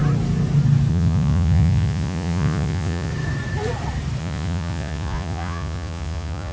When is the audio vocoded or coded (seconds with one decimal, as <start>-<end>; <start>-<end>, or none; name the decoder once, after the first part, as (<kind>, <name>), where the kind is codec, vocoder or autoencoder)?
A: 0.9-3.1 (vocoder, Vocos); 4.2-6.5